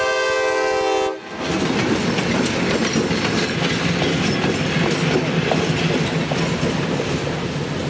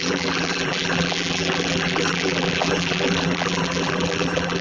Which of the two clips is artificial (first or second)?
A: second